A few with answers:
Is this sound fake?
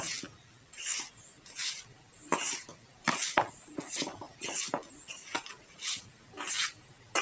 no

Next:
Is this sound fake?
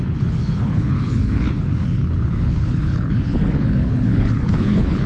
yes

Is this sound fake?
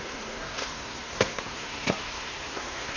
yes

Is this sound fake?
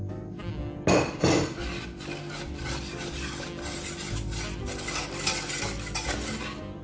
no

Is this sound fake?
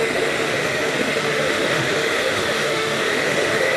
yes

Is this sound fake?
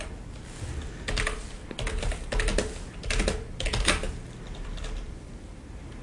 no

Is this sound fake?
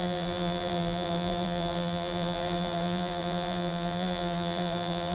yes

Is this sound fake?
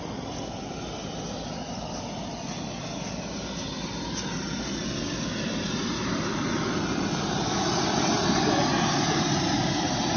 no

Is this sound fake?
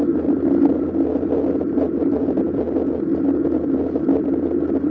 no